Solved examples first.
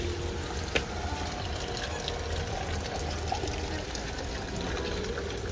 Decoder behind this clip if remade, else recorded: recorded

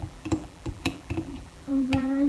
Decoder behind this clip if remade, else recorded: remade, vocoder, BigVGAN v2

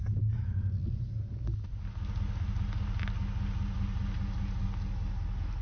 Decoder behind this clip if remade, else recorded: recorded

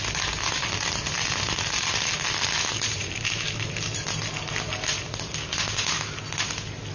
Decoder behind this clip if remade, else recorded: recorded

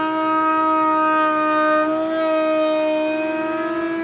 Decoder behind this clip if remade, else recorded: recorded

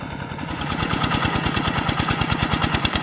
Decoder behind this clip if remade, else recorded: remade, vocoder, Vocos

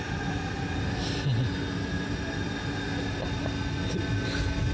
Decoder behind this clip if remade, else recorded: recorded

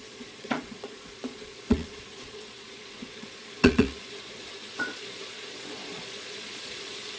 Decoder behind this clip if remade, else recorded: remade, vocoder, Vocos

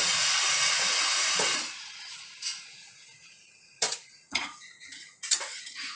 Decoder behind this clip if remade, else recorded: remade, vocoder, Vocos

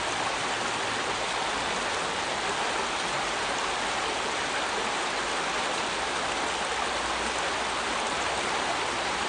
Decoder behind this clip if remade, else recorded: recorded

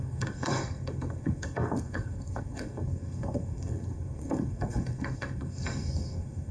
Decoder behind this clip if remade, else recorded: remade, codec, SNAC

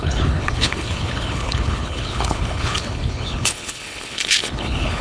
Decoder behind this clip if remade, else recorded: remade, codec, HILCodec